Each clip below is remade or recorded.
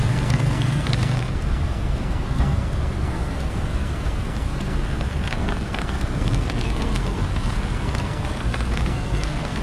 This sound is remade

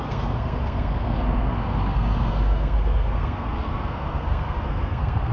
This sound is remade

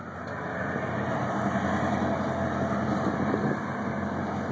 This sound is recorded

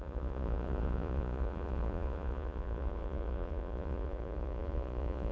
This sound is remade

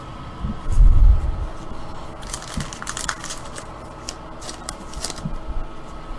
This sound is recorded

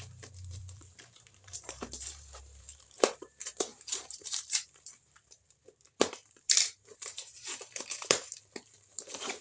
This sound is remade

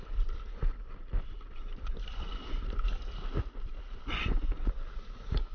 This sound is remade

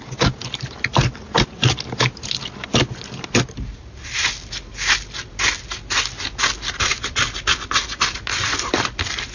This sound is recorded